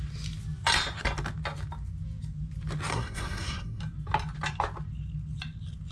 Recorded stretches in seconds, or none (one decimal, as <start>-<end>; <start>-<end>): 0.0-2.9; 3.8-5.9